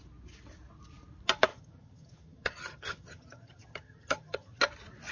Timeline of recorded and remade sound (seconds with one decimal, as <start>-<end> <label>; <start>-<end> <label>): 0.0-1.5 recorded; 1.5-4.6 remade; 4.6-5.1 recorded